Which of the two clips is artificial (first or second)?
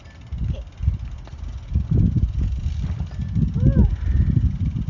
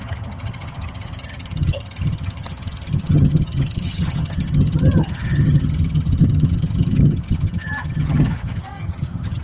second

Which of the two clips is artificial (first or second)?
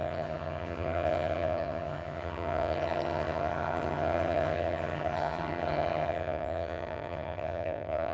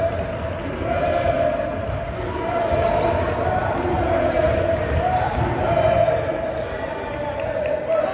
first